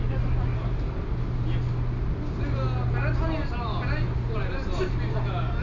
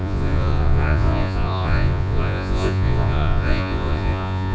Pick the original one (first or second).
first